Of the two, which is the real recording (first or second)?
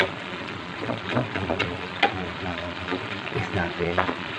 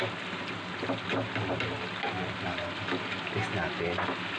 second